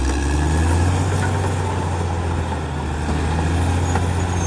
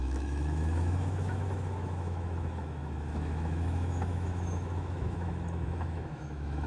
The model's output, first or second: second